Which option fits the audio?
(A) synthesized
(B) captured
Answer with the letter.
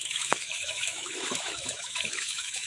A